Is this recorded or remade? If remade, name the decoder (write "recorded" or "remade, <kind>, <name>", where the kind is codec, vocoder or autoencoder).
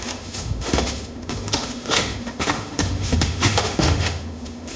remade, autoencoder, DAC-VAE